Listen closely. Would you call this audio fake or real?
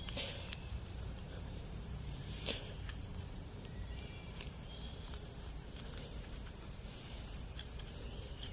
fake